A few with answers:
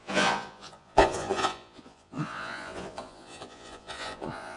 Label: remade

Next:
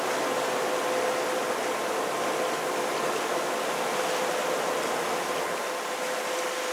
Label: recorded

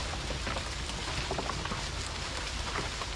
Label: recorded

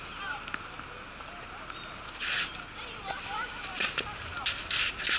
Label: recorded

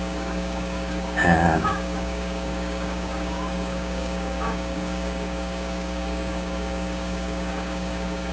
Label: remade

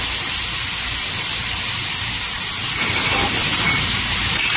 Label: recorded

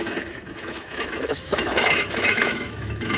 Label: remade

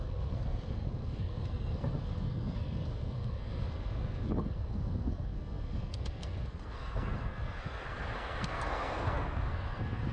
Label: remade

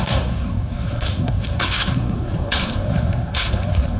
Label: remade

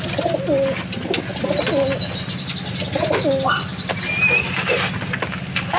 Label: recorded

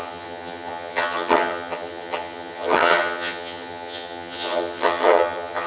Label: remade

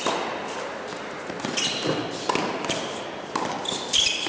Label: recorded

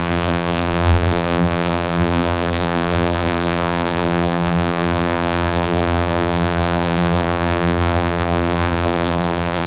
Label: remade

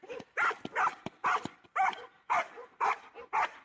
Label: recorded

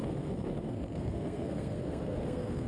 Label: remade